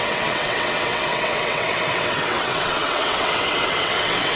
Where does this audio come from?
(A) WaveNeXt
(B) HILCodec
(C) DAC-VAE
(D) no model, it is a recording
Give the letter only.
A